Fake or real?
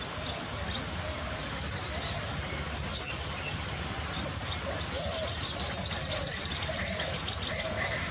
real